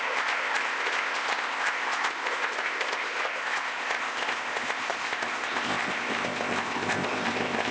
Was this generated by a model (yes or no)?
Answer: yes